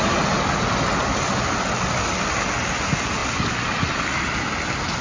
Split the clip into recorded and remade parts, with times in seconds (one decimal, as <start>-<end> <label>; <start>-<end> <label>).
0.0-5.0 recorded